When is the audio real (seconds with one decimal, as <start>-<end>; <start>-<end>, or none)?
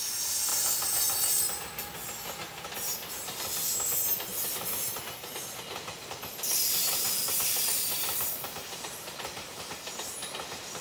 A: 0.0-0.5; 1.0-6.8; 9.6-10.8